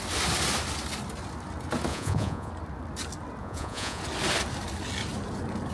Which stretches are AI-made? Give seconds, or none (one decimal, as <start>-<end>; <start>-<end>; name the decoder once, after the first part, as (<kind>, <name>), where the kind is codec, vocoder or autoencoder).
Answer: 1.9-2.5 (vocoder, Vocos); 3.4-4.0